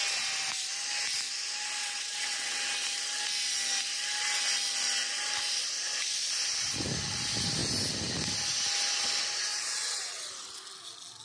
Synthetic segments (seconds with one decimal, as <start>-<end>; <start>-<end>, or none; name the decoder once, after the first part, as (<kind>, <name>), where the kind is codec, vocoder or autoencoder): 1.8-2.6 (vocoder, WaveNeXt); 9.5-10.3